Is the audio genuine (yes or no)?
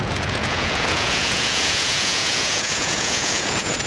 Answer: no